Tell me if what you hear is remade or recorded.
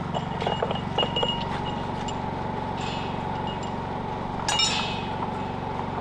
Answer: recorded